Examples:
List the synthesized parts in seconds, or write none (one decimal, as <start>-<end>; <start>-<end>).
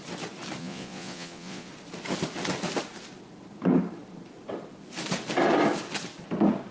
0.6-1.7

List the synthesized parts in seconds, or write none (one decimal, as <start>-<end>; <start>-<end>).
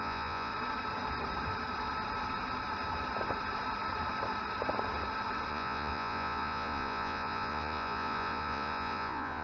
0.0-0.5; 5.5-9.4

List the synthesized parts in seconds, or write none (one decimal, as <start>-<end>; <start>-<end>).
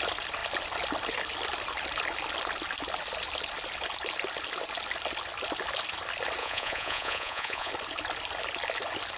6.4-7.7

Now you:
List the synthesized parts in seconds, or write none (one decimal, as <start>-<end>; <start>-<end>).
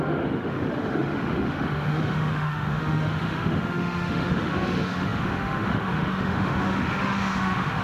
0.0-7.8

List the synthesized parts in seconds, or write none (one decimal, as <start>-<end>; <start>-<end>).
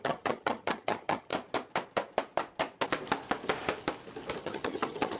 0.0-1.3; 4.4-5.2